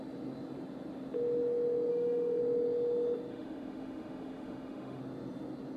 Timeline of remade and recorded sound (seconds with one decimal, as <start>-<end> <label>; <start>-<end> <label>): 0.0-1.9 recorded; 1.9-2.4 remade; 2.4-3.3 recorded; 3.3-5.0 remade; 5.0-5.8 recorded